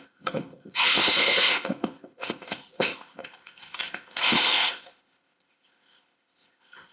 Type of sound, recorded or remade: remade